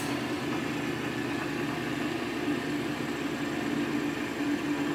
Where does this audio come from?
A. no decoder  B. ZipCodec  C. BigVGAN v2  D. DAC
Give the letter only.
A